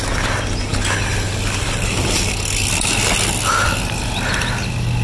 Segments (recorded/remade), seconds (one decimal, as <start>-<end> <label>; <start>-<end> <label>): 0.0-5.0 recorded